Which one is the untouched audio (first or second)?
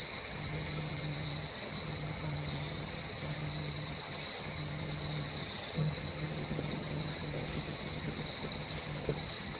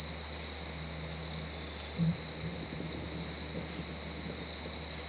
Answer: second